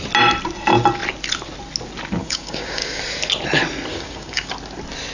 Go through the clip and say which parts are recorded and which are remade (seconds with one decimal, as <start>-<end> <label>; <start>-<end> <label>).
0.0-2.2 recorded; 2.2-3.0 remade; 3.0-3.9 recorded; 3.9-4.5 remade; 4.5-5.1 recorded